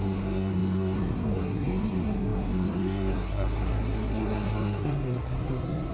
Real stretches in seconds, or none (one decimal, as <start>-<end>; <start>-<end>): none